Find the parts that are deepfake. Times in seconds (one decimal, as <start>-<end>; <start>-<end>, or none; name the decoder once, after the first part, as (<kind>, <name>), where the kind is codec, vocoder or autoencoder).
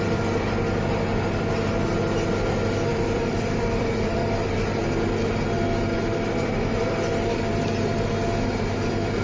2.9-4.4 (vocoder, BigVGAN v2)